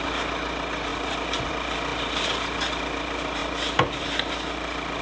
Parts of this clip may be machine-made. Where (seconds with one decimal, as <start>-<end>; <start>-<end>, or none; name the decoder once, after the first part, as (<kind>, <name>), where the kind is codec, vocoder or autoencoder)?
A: none